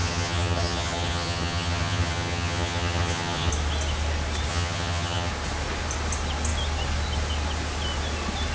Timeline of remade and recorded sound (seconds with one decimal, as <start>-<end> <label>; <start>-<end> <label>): 0.0-3.5 remade; 3.5-4.5 recorded; 4.5-5.3 remade; 5.3-8.5 recorded